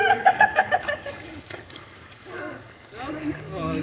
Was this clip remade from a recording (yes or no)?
yes